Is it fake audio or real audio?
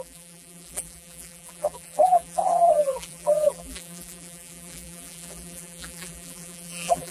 fake